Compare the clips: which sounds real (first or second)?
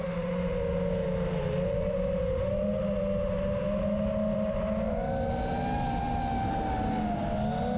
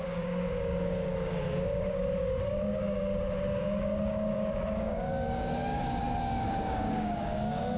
first